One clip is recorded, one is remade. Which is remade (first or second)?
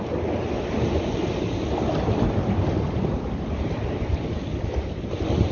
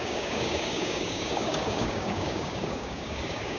second